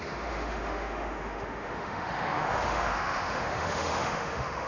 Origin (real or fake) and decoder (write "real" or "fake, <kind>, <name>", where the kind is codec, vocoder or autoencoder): fake, autoencoder, DAC-VAE